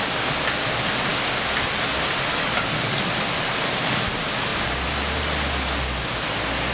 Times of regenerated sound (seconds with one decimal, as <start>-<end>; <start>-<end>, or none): 2.3-3.0